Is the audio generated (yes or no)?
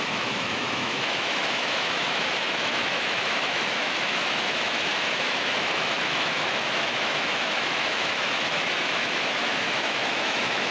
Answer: yes